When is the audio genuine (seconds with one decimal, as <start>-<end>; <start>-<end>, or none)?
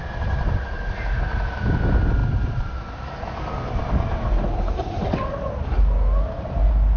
0.0-7.0